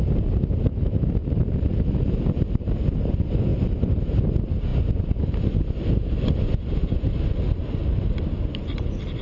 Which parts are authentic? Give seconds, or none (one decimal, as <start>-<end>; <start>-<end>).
0.0-1.2; 1.9-3.5; 4.3-7.8